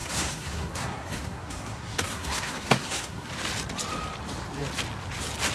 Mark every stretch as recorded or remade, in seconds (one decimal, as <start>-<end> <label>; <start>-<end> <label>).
0.0-3.3 remade; 3.3-5.5 recorded